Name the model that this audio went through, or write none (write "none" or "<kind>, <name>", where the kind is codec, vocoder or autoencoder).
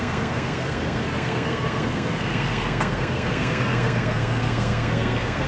codec, SNAC